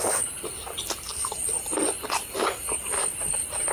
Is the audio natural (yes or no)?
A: yes